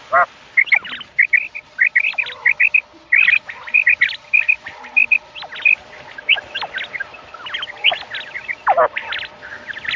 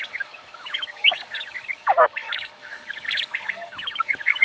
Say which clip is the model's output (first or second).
second